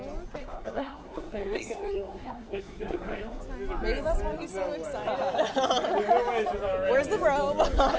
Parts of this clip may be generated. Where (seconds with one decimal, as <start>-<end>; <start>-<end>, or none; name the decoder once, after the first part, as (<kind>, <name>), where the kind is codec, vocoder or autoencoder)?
0.4-3.4 (codec, SNAC)